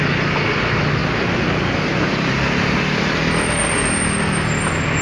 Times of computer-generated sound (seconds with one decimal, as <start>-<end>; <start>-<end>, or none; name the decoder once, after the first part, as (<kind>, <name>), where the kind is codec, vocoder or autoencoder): none